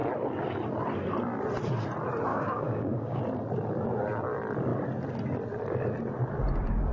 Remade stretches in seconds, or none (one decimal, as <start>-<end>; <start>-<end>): 2.3-3.2